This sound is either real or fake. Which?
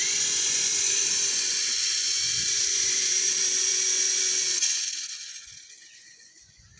fake